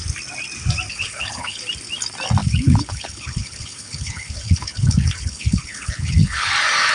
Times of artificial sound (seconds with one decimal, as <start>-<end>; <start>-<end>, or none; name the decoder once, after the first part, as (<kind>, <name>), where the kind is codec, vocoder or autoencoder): 0.9-1.6 (codec, HILCodec); 2.4-6.5